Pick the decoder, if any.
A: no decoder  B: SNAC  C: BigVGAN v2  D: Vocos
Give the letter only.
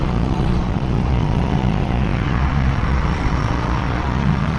D